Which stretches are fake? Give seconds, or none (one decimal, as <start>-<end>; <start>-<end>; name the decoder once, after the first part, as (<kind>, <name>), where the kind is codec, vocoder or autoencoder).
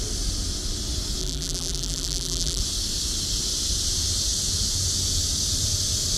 1.2-2.6 (vocoder, BigVGAN v2)